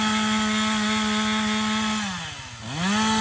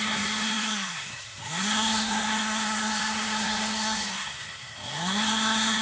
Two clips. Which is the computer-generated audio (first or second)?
second